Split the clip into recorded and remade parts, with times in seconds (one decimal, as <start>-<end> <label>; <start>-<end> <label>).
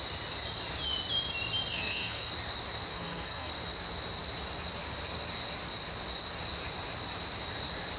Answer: 0.0-1.7 recorded; 1.7-2.3 remade; 2.3-2.9 recorded; 2.9-3.5 remade; 3.5-8.0 recorded